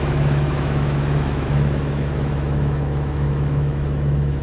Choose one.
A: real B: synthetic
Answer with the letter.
B